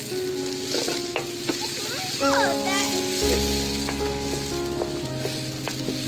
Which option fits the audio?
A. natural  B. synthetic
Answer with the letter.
A